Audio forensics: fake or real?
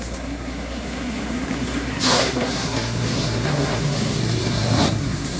fake